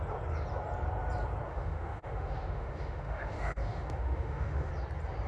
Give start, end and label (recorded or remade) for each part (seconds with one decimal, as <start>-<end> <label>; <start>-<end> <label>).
0.0-1.5 recorded; 1.5-4.7 remade; 4.7-5.3 recorded